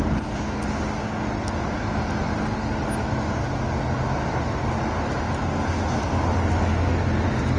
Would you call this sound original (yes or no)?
yes